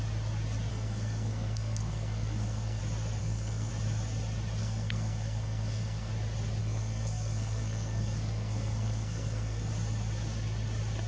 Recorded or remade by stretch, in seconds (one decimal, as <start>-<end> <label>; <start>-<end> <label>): 0.0-0.7 recorded; 0.7-2.8 remade; 2.8-3.2 recorded; 3.2-3.7 remade; 3.7-4.6 recorded; 4.6-6.1 remade; 6.1-6.6 recorded; 6.6-9.7 remade; 9.7-11.1 recorded